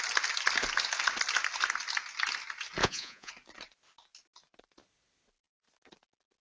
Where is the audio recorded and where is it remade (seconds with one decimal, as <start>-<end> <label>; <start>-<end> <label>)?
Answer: 0.0-2.8 recorded; 2.8-3.3 remade; 3.3-6.4 recorded